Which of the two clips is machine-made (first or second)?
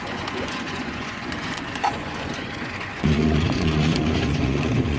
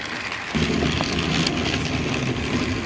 first